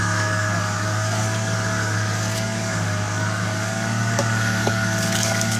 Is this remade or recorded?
remade